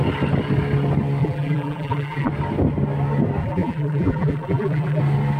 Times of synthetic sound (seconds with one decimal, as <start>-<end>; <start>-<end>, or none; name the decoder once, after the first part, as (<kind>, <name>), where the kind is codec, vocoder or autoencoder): 1.2-2.3 (vocoder, BigVGAN v2); 3.4-5.0